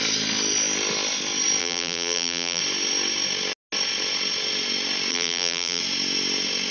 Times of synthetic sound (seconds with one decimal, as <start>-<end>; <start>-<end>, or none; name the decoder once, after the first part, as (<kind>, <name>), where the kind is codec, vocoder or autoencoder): 1.6-2.6 (vocoder, BigVGAN v2); 5.1-5.8